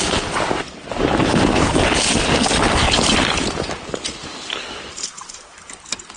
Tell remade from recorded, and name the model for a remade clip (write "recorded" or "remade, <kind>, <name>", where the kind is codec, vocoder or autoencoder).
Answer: recorded